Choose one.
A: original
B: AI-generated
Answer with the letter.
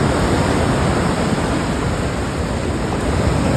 A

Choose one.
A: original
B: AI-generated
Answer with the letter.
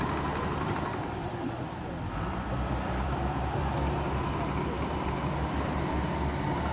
B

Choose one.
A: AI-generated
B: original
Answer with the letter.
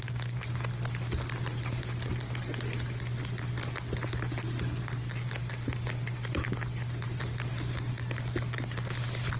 B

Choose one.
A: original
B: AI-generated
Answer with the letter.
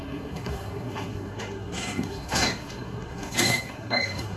B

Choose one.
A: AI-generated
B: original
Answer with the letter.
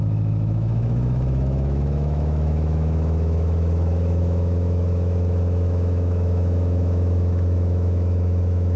A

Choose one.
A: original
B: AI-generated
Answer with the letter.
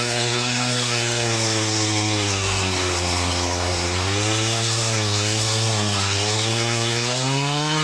B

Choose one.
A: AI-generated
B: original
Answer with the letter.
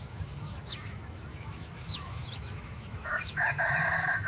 A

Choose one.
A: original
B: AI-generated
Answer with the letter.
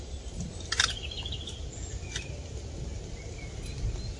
A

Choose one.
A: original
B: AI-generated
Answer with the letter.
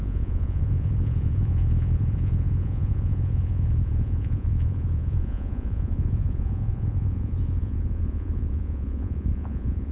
B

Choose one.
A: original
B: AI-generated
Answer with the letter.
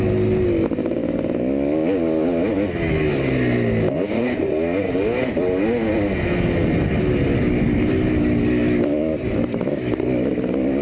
A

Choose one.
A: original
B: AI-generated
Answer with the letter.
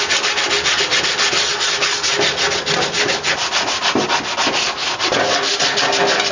A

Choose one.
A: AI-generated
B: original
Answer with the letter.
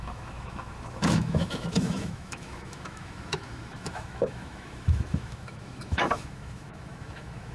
A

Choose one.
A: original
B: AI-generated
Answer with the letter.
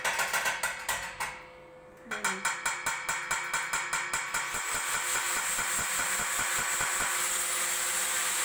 A